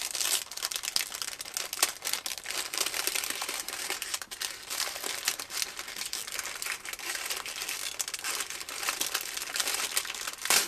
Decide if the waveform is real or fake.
real